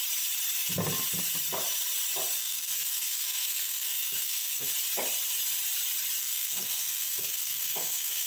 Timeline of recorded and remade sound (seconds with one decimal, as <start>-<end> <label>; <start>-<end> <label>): 0.0-2.4 recorded; 2.4-4.7 remade; 4.7-6.2 recorded; 6.2-8.3 remade